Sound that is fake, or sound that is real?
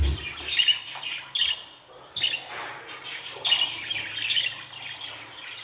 real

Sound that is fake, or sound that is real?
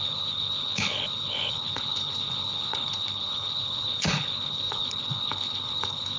fake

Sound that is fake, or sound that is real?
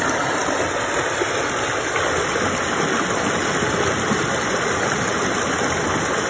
real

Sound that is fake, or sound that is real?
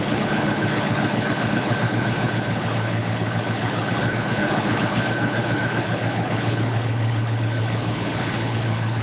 fake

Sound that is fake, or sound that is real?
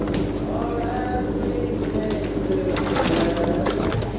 real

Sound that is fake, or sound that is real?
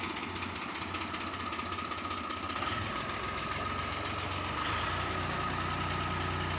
real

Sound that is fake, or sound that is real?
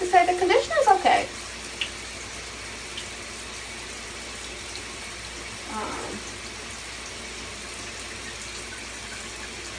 real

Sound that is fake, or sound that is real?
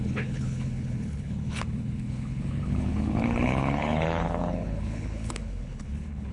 fake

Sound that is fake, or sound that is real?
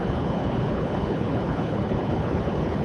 fake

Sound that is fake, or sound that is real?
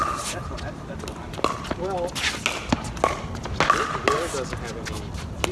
real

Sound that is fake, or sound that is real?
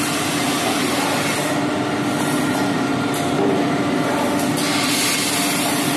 real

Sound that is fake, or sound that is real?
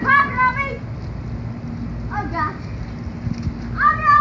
real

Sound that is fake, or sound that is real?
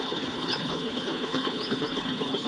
fake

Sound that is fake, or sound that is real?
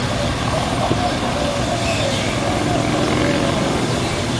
real